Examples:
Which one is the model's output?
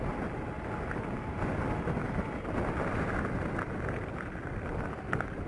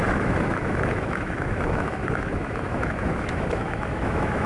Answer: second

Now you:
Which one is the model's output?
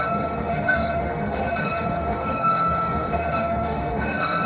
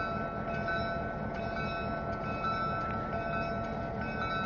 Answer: first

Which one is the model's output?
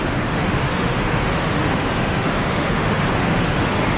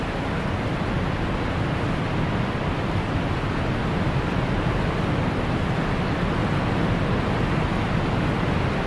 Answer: first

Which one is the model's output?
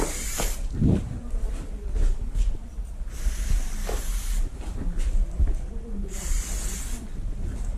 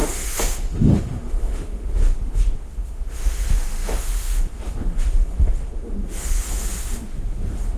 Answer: second